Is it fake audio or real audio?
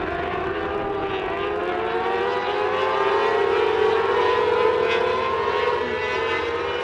real